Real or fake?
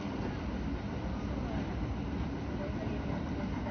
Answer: real